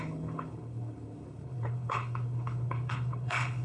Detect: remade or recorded remade